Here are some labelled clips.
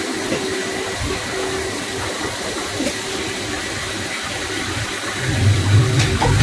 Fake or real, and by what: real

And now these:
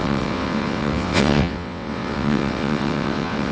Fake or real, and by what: fake, vocoder, WaveNeXt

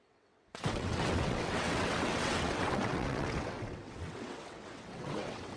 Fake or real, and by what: fake, vocoder, WaveNeXt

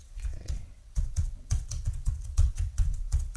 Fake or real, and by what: fake, vocoder, WaveNeXt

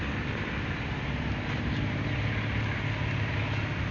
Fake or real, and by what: real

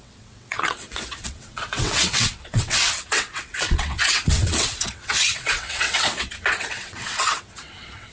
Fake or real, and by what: fake, vocoder, WaveNeXt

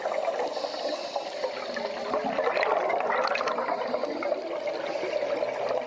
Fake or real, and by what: real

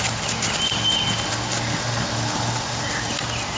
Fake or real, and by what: real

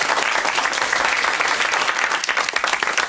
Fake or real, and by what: real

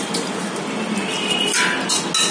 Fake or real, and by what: real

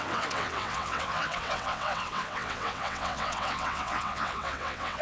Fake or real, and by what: fake, vocoder, WaveNeXt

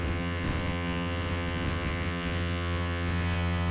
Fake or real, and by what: fake, vocoder, WaveNeXt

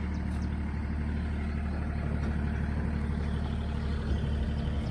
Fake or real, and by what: real